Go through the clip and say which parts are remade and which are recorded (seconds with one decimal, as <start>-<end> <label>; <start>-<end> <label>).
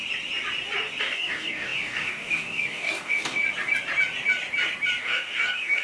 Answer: 0.0-1.0 recorded; 1.0-3.4 remade; 3.4-5.0 recorded; 5.0-5.8 remade